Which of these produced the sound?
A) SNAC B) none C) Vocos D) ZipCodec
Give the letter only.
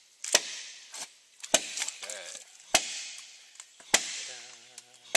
B